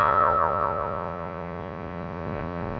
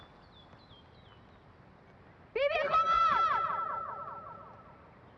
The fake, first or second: first